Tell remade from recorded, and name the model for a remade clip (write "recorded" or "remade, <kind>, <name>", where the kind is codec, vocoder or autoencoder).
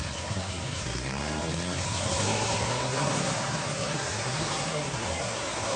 remade, codec, SNAC